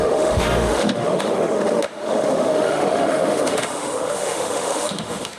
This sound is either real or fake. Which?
fake